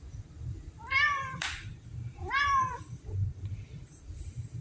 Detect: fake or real fake